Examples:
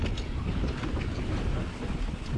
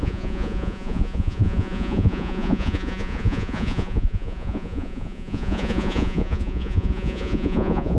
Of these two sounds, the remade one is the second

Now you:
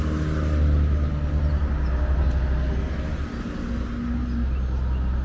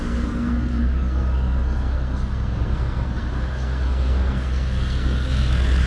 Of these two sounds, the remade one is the second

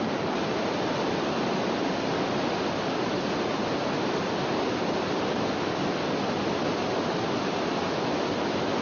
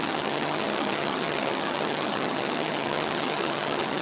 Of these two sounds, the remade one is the second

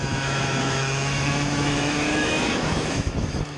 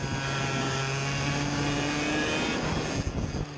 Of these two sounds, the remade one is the first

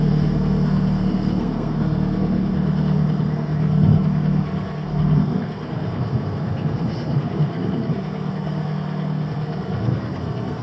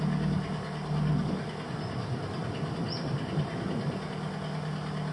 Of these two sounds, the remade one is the first